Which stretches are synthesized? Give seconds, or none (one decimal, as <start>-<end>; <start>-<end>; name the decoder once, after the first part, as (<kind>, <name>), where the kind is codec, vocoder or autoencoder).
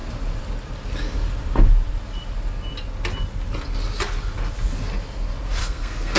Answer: 5.6-6.2 (codec, SNAC)